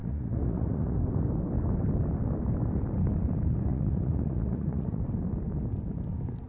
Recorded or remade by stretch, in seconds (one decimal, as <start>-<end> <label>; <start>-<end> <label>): 0.0-1.0 remade; 1.0-3.7 recorded; 3.7-5.0 remade; 5.0-6.5 recorded